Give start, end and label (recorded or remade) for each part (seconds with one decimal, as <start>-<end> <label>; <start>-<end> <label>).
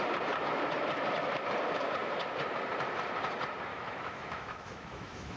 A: 0.0-3.7 recorded; 3.7-5.4 remade